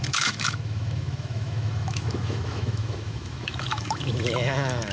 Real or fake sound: fake